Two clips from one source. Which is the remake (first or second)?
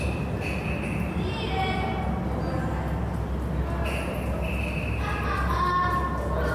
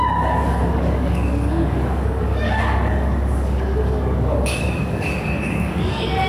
second